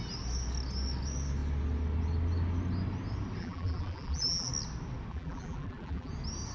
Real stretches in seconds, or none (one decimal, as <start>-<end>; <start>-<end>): 0.0-3.4; 4.5-5.1; 6.1-6.5